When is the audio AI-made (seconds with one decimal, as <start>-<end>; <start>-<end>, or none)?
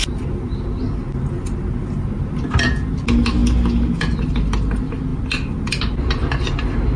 none